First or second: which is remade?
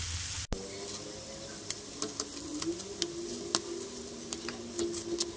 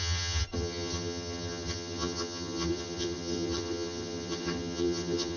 second